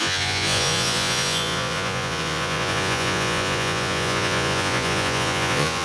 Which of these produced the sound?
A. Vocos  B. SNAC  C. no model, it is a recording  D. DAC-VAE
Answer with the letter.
A